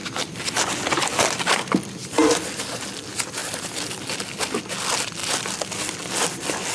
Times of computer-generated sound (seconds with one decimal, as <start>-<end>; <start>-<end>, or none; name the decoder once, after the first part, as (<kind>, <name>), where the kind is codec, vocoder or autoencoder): none